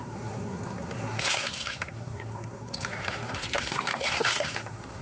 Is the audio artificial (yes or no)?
yes